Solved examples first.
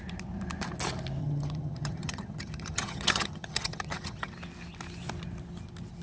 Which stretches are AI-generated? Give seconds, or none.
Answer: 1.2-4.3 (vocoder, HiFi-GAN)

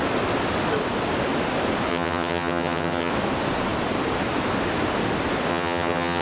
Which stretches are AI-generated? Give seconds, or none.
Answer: 1.9-3.1 (vocoder, HiFi-GAN); 5.5-6.2